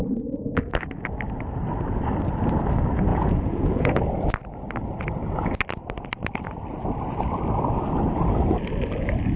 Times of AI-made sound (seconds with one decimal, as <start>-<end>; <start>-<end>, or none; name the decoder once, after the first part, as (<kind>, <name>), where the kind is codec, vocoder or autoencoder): 3.1-3.9 (vocoder, Vocos)